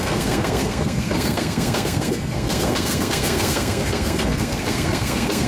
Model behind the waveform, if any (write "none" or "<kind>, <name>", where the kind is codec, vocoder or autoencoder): codec, SNAC